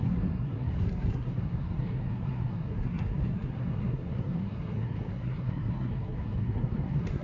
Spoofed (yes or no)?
yes